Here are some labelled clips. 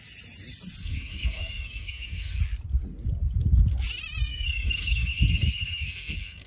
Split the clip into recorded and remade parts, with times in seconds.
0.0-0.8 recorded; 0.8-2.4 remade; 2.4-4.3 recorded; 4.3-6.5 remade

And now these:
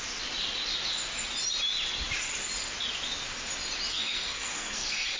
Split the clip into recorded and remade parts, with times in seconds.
0.0-3.9 recorded; 3.9-5.2 remade

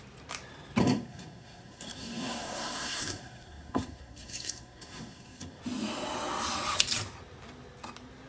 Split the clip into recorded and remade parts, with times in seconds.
0.0-0.8 recorded; 0.8-5.6 remade; 5.6-8.3 recorded

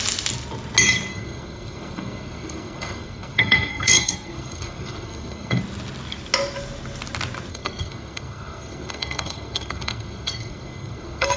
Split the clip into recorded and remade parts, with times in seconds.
0.0-1.1 recorded; 1.1-5.6 remade; 5.6-7.5 recorded; 7.5-11.4 remade

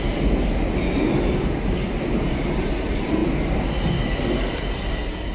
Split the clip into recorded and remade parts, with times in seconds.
0.0-5.3 recorded

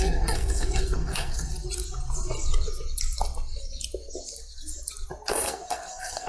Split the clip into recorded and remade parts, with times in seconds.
0.0-1.5 remade; 1.5-5.3 recorded; 5.3-6.3 remade

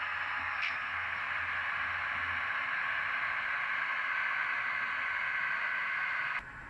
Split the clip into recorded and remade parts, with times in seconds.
0.0-0.4 recorded; 0.4-1.2 remade; 1.2-6.7 recorded

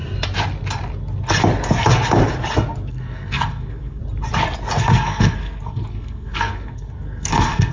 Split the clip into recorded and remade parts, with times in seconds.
0.0-2.9 recorded; 2.9-4.0 remade; 4.0-4.8 recorded; 4.8-7.7 remade